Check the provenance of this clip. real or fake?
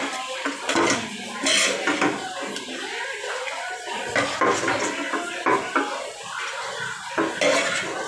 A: real